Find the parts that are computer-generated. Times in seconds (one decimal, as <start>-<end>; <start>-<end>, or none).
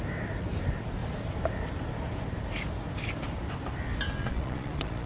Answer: 4.2-5.1